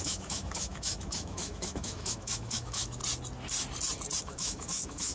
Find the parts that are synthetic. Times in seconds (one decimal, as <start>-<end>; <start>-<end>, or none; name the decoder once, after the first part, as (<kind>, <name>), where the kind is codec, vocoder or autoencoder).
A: 0.0-3.0 (autoencoder, DAC-VAE); 4.2-5.1